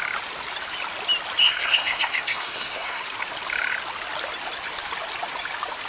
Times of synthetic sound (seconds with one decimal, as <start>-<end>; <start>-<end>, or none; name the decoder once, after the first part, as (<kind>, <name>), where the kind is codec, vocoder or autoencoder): 1.4-3.0 (codec, SNAC)